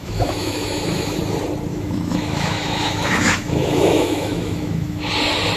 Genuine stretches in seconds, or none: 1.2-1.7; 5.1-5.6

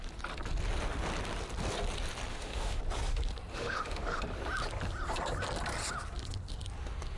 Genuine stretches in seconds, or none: 0.0-2.3; 2.8-3.5; 4.2-7.2

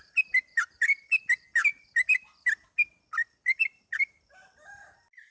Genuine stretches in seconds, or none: 0.0-5.3

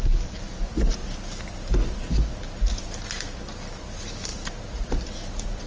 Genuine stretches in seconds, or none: 0.0-5.7

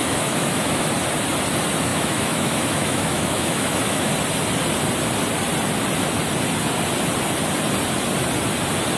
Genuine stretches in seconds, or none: 0.8-1.9; 4.1-9.0

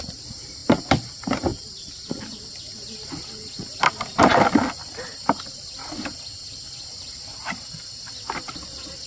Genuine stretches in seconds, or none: 0.0-0.6; 1.1-1.5; 2.5-9.1